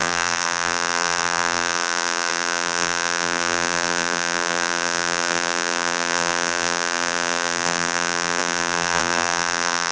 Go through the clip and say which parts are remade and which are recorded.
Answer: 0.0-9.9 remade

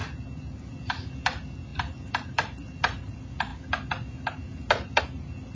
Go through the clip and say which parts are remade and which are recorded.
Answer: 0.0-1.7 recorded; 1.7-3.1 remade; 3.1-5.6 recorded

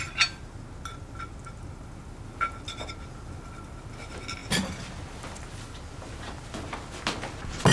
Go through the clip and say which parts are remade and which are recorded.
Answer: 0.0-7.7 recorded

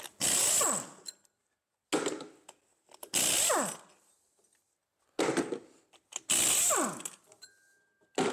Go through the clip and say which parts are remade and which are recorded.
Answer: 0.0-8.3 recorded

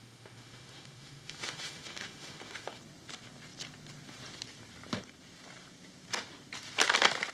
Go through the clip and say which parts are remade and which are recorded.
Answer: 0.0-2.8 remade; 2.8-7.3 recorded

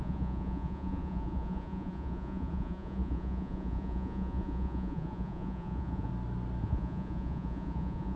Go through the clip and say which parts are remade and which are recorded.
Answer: 0.0-6.1 remade; 6.1-6.6 recorded; 6.6-8.2 remade

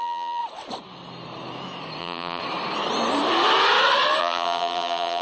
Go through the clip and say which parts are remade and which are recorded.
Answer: 0.0-0.4 remade; 0.4-2.0 recorded; 2.0-2.4 remade; 2.4-4.2 recorded; 4.2-5.2 remade

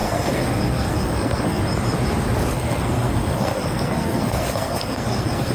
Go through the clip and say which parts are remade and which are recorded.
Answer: 0.0-1.6 remade; 1.6-2.5 recorded; 2.5-5.5 remade